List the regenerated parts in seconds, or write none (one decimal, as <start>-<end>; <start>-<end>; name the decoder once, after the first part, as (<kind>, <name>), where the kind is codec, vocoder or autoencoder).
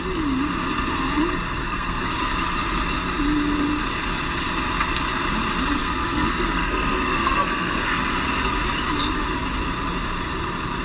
1.6-2.1 (codec, SNAC); 5.8-8.0